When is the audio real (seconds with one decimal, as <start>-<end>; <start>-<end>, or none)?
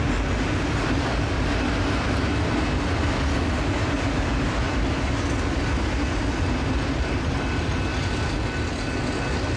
0.0-9.6